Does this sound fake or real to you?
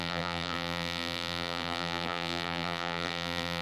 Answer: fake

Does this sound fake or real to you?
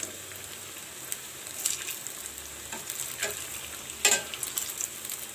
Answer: real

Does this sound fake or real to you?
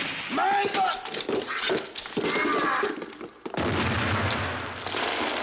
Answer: real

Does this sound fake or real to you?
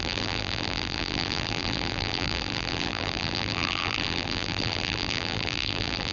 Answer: fake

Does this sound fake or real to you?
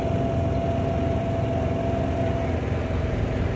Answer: real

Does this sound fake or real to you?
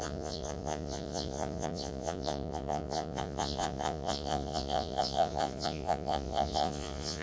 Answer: fake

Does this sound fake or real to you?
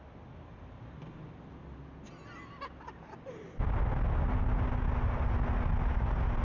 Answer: real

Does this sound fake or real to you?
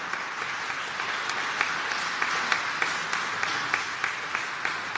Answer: real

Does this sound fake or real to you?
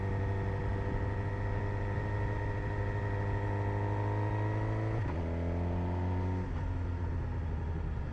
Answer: real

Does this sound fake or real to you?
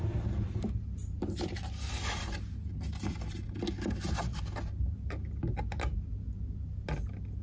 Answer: real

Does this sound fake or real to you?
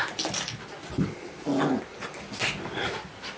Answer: real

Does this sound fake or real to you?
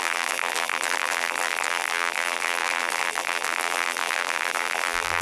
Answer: fake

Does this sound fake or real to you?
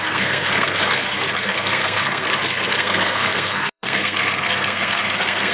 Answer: fake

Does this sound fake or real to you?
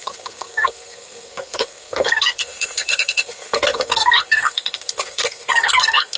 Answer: fake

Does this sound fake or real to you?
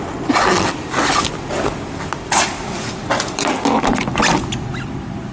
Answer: real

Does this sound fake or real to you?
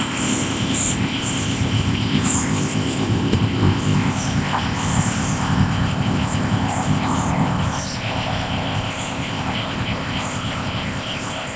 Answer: fake